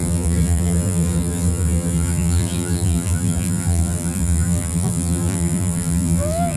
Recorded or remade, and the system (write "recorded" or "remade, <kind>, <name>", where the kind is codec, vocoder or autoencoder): remade, vocoder, BigVGAN v2